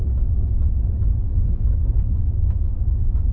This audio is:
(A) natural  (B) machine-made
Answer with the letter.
A